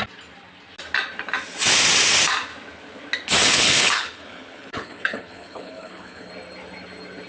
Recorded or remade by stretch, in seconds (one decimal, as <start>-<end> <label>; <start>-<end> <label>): 0.0-3.4 recorded; 3.4-6.3 remade; 6.3-7.3 recorded